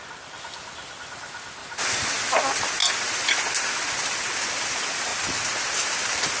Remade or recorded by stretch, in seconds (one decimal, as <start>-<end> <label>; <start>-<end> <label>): 0.0-1.6 recorded; 1.6-2.2 remade; 2.2-6.4 recorded